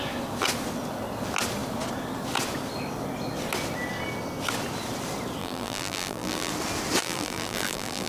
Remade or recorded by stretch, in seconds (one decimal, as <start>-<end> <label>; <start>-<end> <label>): 0.0-5.4 recorded; 5.4-6.5 remade; 6.5-7.0 recorded; 7.0-8.1 remade